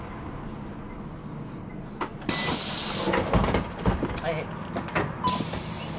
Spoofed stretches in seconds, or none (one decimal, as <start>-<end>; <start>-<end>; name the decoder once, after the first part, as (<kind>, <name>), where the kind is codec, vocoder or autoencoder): 1.2-1.7 (codec, DAC)